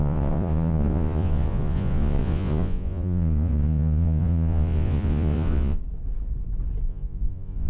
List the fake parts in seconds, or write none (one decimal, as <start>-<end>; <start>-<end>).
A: 0.0-5.8; 6.9-7.7